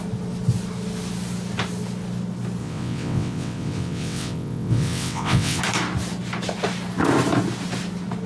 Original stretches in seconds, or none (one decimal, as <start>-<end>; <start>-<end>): 0.0-2.6; 5.6-8.3